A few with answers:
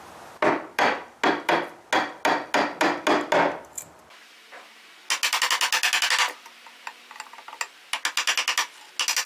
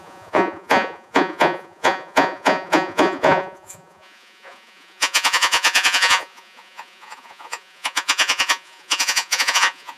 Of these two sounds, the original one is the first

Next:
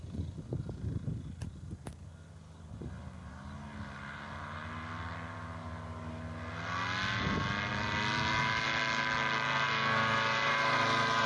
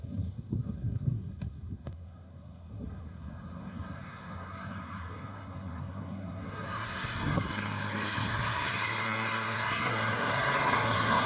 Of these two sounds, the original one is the first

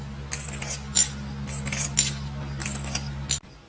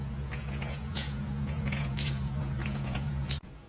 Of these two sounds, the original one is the first